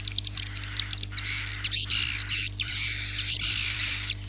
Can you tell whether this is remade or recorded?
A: remade